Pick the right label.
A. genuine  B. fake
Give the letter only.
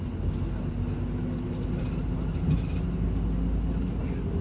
A